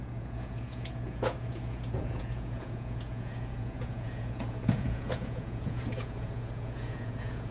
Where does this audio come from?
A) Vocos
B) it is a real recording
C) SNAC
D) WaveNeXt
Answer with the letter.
A